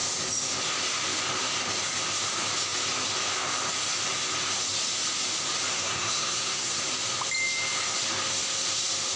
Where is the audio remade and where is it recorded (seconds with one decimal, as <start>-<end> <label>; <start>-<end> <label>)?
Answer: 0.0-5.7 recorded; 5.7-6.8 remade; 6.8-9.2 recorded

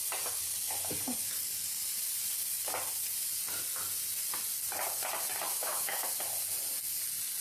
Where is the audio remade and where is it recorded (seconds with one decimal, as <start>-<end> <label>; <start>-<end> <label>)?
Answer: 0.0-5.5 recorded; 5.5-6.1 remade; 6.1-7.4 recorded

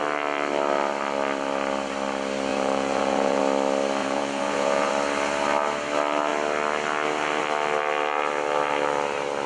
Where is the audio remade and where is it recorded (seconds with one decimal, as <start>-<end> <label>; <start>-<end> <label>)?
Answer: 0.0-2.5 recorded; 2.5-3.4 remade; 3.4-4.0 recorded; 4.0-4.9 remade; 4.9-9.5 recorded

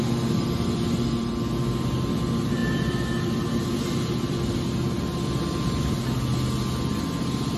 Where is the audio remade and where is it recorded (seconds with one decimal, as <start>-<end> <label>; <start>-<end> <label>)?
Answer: 0.0-7.6 recorded

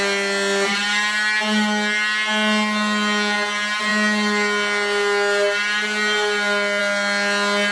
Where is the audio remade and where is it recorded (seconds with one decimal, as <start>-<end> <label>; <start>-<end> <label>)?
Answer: 0.0-7.7 recorded

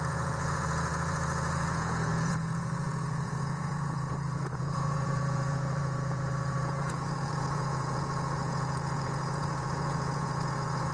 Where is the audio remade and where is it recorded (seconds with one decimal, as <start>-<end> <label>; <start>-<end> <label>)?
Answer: 0.0-10.9 remade

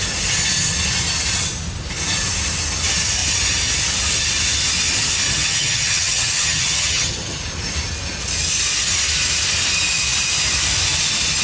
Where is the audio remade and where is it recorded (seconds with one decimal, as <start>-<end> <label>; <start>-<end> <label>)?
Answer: 0.0-5.3 recorded; 5.3-7.4 remade; 7.4-11.4 recorded